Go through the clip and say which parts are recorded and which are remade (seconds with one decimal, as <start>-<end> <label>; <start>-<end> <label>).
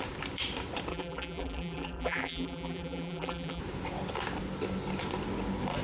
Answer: 0.0-0.9 recorded; 0.9-3.6 remade; 3.6-5.8 recorded